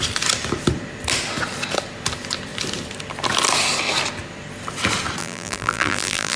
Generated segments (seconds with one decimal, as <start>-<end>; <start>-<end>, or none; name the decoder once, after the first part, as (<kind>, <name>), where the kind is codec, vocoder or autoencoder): 5.2-6.4 (vocoder, BigVGAN v2)